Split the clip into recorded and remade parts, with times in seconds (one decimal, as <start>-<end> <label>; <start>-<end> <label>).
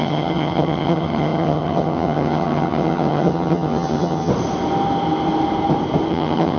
0.0-4.3 remade; 4.3-6.1 recorded; 6.1-6.6 remade